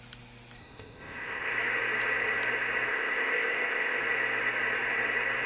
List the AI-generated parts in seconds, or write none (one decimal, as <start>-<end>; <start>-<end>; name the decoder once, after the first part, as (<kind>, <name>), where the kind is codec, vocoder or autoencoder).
0.6-1.5 (codec, ZipCodec); 2.9-4.0